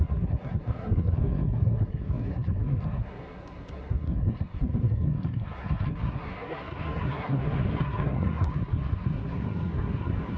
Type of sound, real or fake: fake